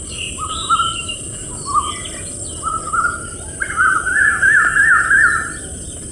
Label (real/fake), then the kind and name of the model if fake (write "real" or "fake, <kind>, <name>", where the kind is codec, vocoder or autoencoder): real